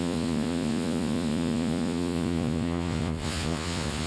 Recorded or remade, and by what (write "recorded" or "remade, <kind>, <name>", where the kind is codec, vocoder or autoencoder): remade, vocoder, Vocos